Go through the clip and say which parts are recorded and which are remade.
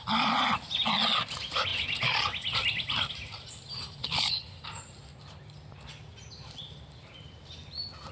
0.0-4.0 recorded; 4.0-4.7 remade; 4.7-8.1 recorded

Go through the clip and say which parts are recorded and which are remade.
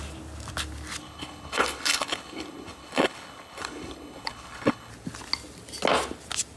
0.0-1.0 recorded; 1.0-4.9 remade; 4.9-6.6 recorded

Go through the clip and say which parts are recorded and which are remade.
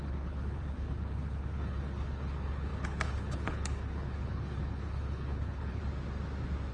0.0-5.8 remade; 5.8-6.7 recorded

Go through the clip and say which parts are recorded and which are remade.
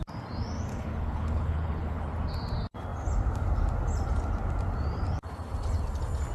0.0-0.7 recorded; 0.7-2.0 remade; 2.0-6.3 recorded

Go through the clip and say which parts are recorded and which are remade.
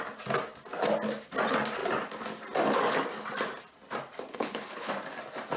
0.0-4.3 recorded; 4.3-4.9 remade; 4.9-5.6 recorded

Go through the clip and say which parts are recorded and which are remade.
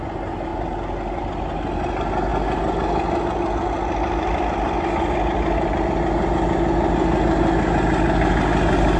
0.0-9.0 recorded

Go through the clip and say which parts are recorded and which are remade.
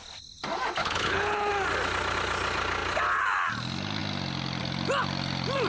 0.0-0.8 recorded; 0.8-1.5 remade; 1.5-5.7 recorded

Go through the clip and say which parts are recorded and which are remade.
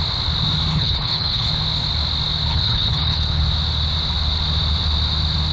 0.0-0.7 recorded; 0.7-1.5 remade; 1.5-2.5 recorded; 2.5-3.4 remade; 3.4-5.5 recorded